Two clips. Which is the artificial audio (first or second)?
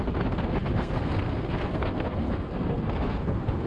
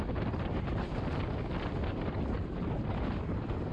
first